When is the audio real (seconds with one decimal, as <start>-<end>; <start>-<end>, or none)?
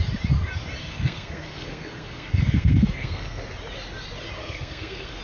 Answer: 0.0-0.8; 3.4-4.4